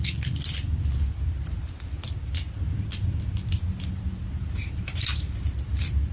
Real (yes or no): no